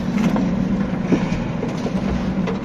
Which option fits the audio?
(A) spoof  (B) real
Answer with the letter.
B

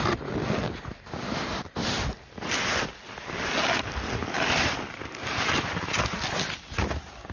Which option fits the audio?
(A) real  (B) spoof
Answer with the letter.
A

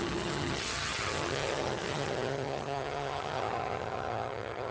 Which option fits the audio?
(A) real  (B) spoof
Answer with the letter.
B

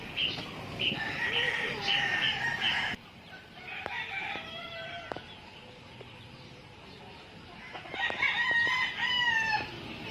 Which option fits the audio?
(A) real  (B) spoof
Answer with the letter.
B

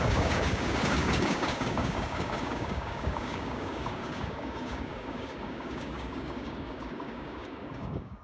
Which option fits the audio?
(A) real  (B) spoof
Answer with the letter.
B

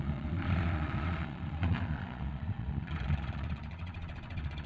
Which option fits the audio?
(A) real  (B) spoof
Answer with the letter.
B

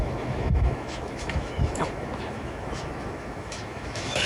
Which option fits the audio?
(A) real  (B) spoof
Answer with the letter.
B